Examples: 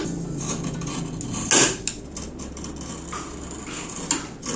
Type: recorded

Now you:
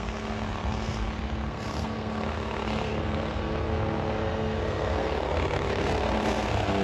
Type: remade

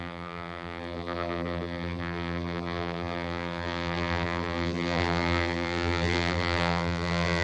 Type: remade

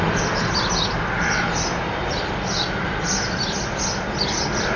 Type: recorded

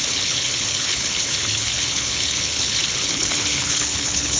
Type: remade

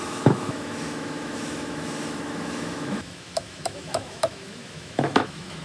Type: remade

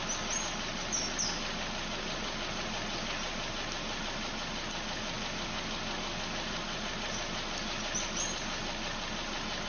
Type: recorded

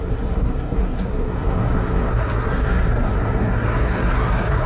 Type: remade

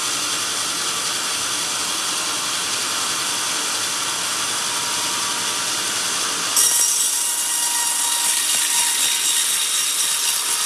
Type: recorded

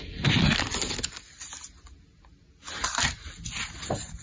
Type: recorded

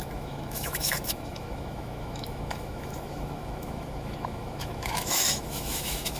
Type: remade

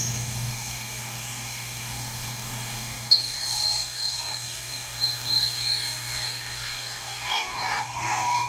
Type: remade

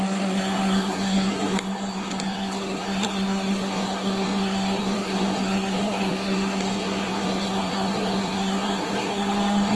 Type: remade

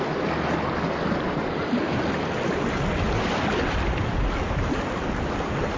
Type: recorded